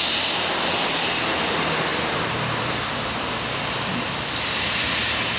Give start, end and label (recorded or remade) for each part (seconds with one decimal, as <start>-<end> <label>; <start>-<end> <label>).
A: 0.0-1.9 recorded; 1.9-4.8 remade; 4.8-5.4 recorded